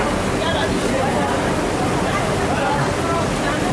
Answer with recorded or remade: recorded